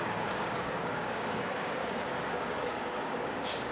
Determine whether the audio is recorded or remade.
remade